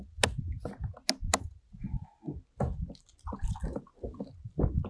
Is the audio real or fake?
real